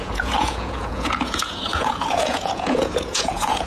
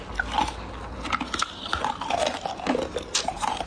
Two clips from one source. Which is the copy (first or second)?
first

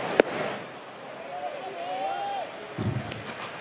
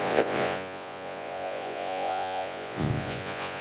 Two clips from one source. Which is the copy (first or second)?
second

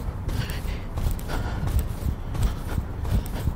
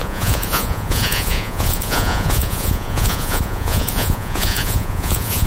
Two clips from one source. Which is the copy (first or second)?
second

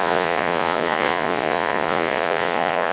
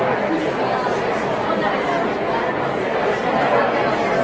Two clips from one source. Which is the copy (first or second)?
first